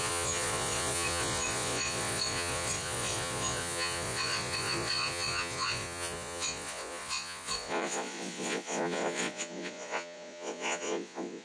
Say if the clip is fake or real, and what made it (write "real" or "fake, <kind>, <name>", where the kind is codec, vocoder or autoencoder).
fake, vocoder, Vocos